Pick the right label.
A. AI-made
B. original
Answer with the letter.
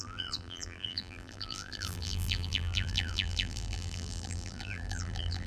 A